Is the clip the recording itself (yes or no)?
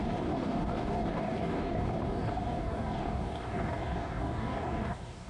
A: no